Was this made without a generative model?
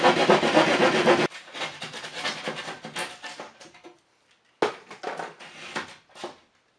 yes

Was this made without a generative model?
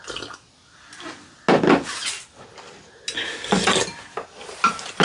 yes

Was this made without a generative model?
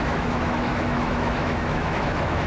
no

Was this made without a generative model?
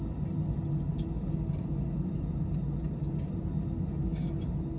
yes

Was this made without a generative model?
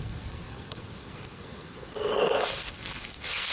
no